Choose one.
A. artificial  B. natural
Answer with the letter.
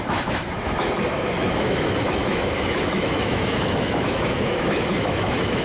A